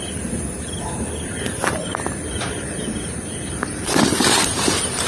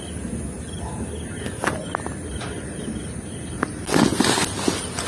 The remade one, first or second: first